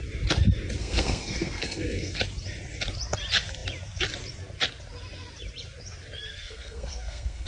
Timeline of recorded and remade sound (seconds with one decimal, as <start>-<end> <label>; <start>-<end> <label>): 0.0-0.8 recorded; 0.8-2.2 remade; 2.2-6.3 recorded; 6.3-7.5 remade